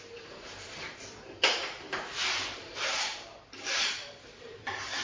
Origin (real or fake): fake